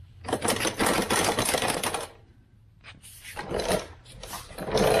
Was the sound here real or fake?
real